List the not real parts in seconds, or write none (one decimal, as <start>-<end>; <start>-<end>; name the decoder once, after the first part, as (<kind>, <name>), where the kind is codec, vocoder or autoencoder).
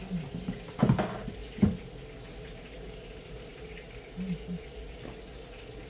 none